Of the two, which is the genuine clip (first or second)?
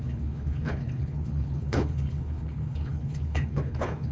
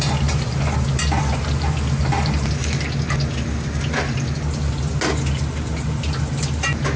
second